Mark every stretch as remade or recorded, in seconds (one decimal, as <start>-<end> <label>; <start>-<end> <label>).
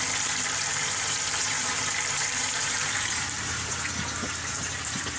0.0-0.7 recorded; 0.7-3.8 remade; 3.8-4.5 recorded; 4.5-5.2 remade